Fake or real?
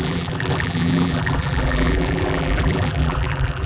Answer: fake